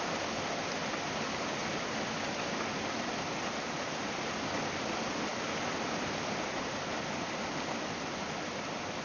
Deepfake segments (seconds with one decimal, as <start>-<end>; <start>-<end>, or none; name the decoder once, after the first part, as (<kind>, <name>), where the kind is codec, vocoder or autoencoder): none